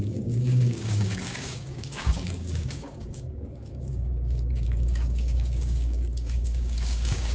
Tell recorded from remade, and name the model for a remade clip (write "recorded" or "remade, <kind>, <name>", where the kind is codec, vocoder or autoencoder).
remade, codec, DAC